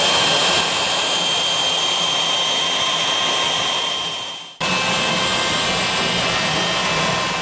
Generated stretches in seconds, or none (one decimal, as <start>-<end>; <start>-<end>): none